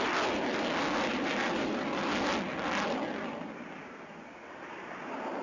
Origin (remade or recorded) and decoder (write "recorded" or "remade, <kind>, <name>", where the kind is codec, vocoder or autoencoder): recorded